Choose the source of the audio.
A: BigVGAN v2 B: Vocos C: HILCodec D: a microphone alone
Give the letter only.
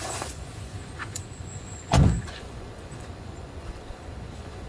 B